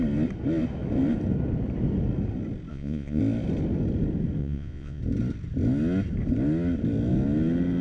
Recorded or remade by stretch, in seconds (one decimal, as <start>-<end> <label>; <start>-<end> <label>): 0.0-2.7 recorded; 2.7-3.2 remade; 3.2-4.4 recorded; 4.4-5.0 remade; 5.0-7.8 recorded